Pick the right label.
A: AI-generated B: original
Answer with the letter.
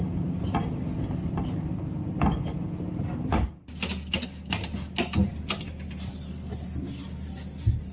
B